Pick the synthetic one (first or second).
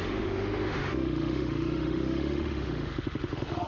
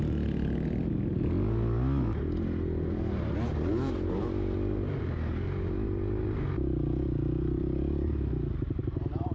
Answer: first